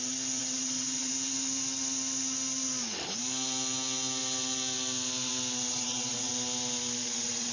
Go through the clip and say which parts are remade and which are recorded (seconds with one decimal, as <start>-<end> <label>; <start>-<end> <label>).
0.0-0.4 recorded; 0.4-1.1 remade; 1.1-5.7 recorded; 5.7-6.3 remade; 6.3-7.0 recorded; 7.0-7.5 remade